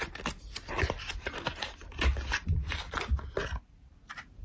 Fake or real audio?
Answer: real